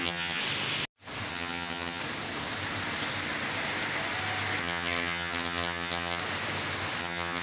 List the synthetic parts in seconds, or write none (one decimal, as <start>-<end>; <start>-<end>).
0.0-0.4; 1.3-2.0; 4.6-6.2; 7.0-7.4

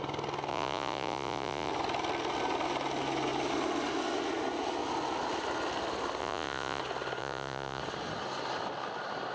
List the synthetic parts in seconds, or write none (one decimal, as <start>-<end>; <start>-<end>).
0.5-1.7; 6.2-6.8; 7.2-7.8

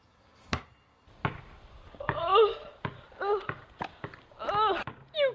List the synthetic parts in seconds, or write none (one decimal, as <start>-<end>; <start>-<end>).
none

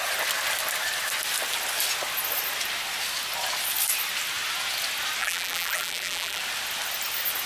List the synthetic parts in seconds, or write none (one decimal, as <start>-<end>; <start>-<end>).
5.2-6.4

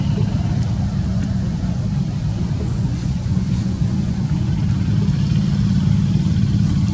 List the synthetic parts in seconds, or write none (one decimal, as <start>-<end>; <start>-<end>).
1.1-1.8; 2.3-4.5

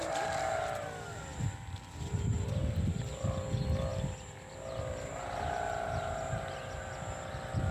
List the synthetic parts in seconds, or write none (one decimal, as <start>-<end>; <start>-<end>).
none

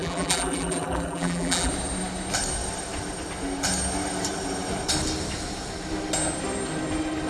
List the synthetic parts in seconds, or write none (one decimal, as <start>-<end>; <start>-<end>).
0.0-1.7

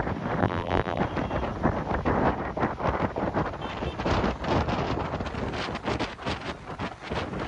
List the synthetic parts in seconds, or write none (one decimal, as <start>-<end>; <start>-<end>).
0.4-1.0